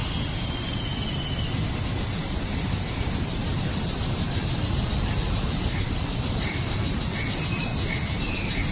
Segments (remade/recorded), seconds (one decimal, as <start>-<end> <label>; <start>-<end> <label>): 0.0-1.7 recorded; 1.7-8.7 remade